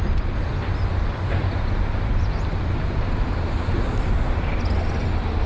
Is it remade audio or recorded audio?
recorded